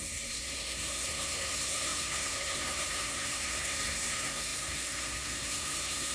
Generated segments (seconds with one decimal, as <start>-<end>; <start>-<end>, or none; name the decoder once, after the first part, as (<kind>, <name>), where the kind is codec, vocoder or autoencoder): 0.0-6.1 (codec, SNAC)